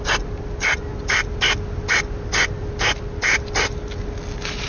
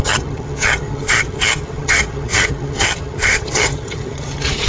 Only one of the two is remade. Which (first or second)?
second